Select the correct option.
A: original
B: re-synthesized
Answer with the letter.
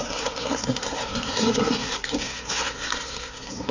B